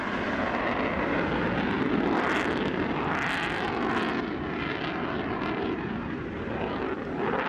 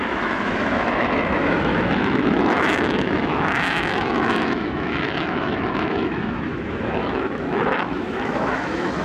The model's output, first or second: second